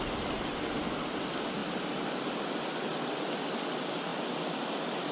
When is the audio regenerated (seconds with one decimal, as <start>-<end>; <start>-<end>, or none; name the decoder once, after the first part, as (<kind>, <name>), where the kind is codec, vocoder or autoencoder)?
none